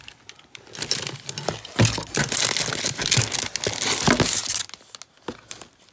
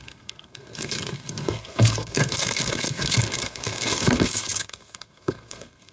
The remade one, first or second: second